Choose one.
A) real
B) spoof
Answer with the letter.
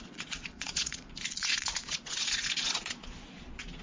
B